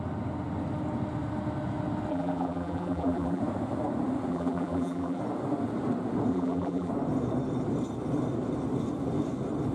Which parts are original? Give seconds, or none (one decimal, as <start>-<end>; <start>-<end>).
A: 0.0-2.1; 3.4-4.3; 5.2-6.3; 6.9-9.7